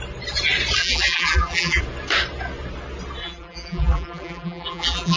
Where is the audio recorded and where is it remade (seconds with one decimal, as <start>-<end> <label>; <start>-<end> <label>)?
0.0-0.8 recorded; 0.8-1.8 remade; 1.8-3.2 recorded; 3.2-5.2 remade